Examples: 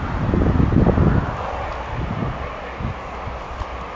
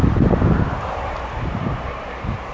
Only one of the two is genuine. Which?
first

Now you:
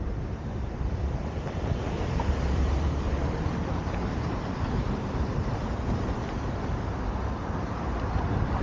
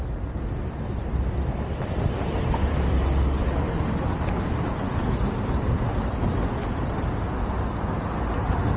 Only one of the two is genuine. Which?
second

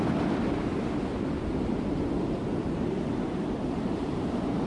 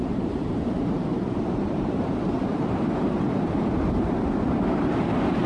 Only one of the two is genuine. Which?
first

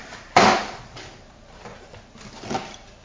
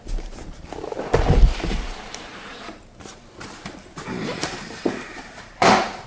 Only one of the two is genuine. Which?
first